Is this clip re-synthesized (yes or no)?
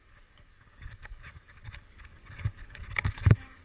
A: yes